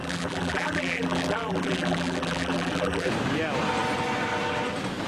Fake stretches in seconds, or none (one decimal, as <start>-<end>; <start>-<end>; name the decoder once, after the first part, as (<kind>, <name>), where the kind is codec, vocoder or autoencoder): 0.0-3.1 (vocoder, BigVGAN v2)